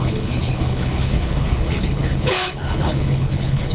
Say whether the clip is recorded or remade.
remade